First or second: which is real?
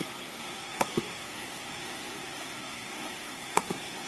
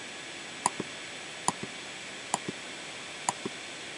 second